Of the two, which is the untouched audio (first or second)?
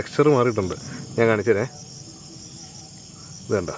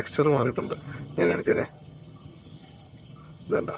first